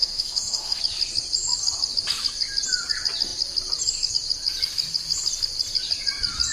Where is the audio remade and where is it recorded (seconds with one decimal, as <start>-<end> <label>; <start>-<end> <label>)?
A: 0.0-0.8 remade; 0.8-6.5 recorded